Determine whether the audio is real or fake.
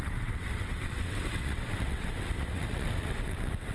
fake